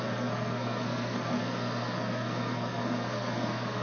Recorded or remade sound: remade